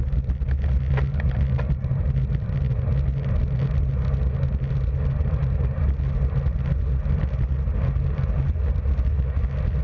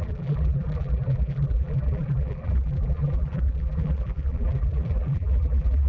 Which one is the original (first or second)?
first